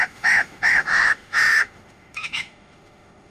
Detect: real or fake fake